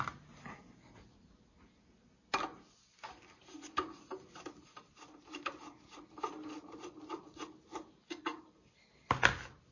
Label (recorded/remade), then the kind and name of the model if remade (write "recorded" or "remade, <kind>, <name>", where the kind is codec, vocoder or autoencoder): recorded